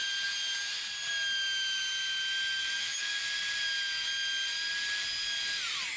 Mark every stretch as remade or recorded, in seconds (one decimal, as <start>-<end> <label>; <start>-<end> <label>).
0.0-2.8 recorded; 2.8-3.2 remade; 3.2-6.0 recorded